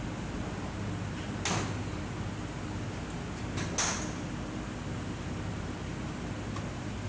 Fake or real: real